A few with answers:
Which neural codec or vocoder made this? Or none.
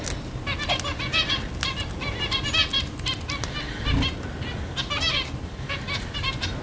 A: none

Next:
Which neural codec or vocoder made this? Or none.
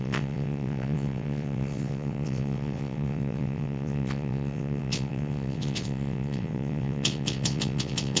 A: vocoder, WaveNeXt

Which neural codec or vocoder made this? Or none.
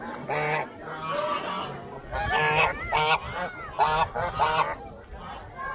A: none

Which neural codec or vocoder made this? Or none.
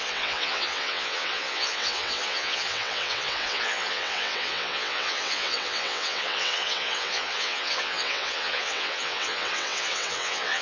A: vocoder, WaveNeXt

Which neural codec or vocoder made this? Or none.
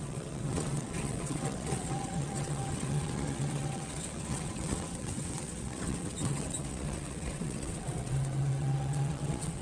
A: vocoder, WaveNeXt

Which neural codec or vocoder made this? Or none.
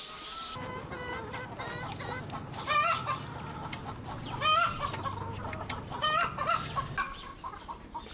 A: none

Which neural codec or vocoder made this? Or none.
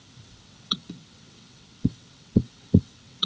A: vocoder, WaveNeXt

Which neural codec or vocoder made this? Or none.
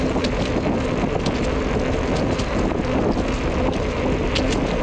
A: none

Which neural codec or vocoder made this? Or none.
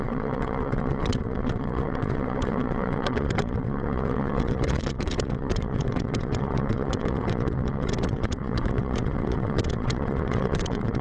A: vocoder, WaveNeXt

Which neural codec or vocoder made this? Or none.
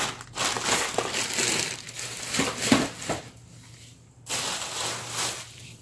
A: none